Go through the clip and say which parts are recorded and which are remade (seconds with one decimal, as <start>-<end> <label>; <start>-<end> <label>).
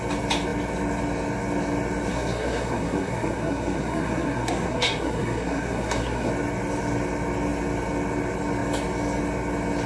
0.0-2.1 recorded; 2.1-6.3 remade; 6.3-9.9 recorded